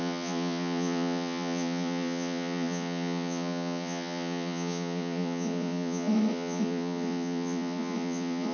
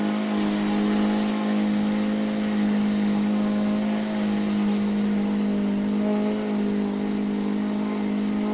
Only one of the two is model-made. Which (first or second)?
first